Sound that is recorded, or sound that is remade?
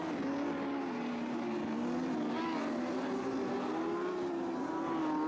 recorded